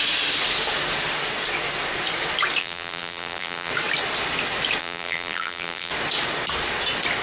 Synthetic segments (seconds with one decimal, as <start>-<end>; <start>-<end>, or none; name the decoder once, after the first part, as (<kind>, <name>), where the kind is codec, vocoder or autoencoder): 2.6-3.7 (vocoder, BigVGAN v2); 4.8-5.9